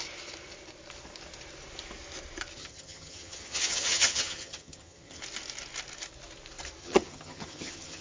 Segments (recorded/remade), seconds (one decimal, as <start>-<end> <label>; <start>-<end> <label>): 0.0-2.6 recorded; 2.6-5.2 remade; 5.2-6.8 recorded; 6.8-8.0 remade